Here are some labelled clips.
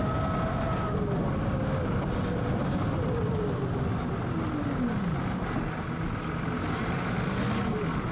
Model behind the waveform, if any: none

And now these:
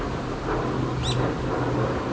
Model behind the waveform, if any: none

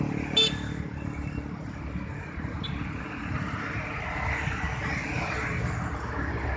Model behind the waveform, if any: none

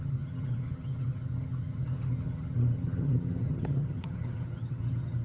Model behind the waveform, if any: vocoder, HiFi-GAN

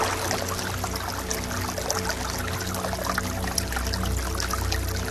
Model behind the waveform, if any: none